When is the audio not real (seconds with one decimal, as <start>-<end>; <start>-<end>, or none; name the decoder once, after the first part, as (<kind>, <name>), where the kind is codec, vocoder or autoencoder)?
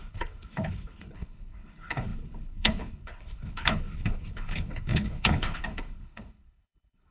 0.0-7.1 (codec, HILCodec)